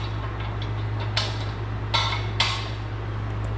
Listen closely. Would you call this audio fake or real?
real